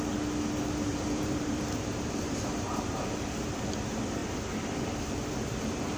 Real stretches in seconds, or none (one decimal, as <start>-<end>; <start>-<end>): 0.0-0.9; 3.0-6.0